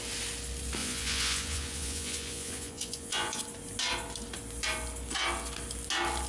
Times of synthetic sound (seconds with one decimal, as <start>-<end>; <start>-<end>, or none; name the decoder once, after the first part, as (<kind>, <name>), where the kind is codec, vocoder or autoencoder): 0.8-3.4 (vocoder, Vocos)